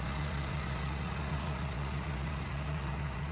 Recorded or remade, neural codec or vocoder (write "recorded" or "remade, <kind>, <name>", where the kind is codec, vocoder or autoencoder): remade, vocoder, Vocos